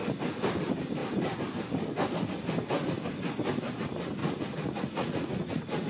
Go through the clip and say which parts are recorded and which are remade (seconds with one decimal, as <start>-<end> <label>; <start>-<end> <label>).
0.0-4.2 recorded; 4.2-5.9 remade